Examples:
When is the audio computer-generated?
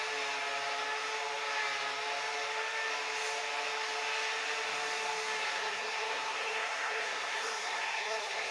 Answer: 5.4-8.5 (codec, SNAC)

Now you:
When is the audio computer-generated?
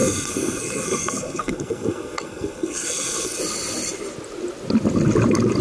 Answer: 0.0-3.4 (codec, SNAC)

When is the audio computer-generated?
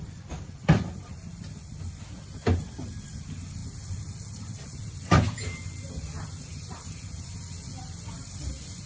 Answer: none